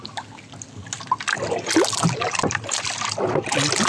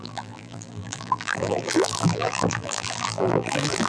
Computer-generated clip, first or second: second